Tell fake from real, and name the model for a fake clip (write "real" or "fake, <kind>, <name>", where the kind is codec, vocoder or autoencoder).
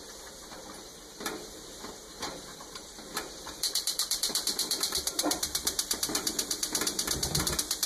fake, vocoder, BigVGAN v2